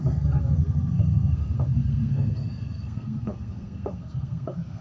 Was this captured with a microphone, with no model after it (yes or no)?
no